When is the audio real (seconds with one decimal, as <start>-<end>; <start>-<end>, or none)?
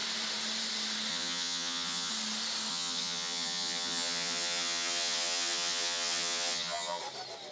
0.0-1.1; 2.1-2.7; 7.0-7.5